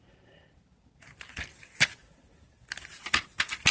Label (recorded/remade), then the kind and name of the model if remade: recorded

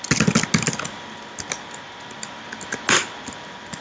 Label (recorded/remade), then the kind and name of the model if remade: recorded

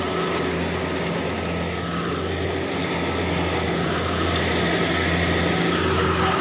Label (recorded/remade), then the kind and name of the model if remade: recorded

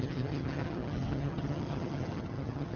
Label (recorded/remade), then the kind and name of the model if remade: remade, vocoder, HiFi-GAN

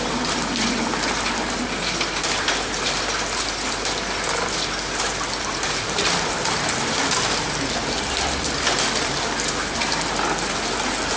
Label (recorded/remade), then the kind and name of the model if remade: recorded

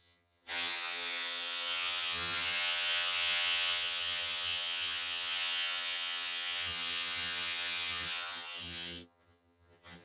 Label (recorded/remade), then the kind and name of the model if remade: remade, vocoder, HiFi-GAN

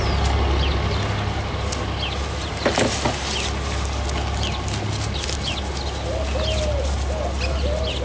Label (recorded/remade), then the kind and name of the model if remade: recorded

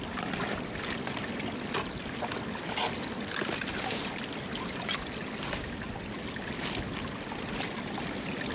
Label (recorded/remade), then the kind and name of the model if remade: recorded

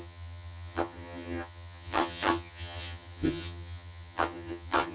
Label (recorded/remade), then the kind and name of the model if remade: remade, vocoder, HiFi-GAN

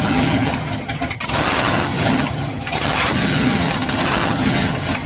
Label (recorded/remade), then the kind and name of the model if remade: remade, vocoder, HiFi-GAN